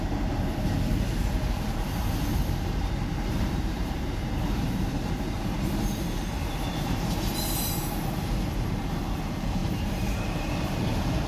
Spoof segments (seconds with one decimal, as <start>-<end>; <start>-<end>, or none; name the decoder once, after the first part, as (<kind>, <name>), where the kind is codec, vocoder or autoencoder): 0.0-11.3 (vocoder, BigVGAN v2)